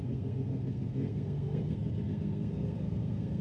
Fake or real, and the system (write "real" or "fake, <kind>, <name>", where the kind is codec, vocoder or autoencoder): fake, codec, SNAC